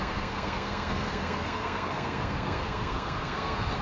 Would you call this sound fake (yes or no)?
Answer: yes